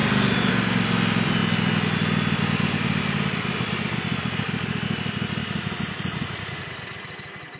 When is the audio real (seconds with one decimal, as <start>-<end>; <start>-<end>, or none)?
0.0-5.4; 6.6-7.6